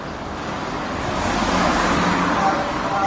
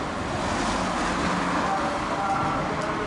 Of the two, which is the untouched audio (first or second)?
second